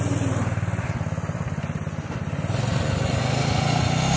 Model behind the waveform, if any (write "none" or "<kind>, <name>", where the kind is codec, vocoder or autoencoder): none